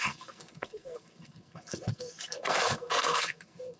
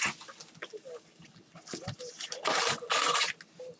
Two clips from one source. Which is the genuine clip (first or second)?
second